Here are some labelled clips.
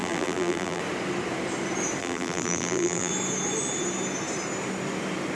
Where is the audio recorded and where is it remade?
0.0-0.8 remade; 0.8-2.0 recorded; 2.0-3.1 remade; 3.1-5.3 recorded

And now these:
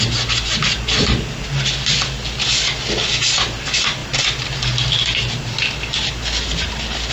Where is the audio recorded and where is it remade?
0.0-7.1 recorded

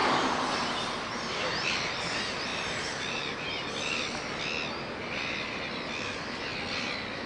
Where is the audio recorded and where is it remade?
0.0-2.0 remade; 2.0-2.5 recorded; 2.5-3.9 remade; 3.9-7.3 recorded

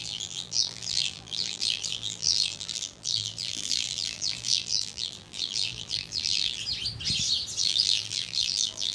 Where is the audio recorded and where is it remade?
0.0-6.6 remade; 6.6-7.6 recorded; 7.6-8.9 remade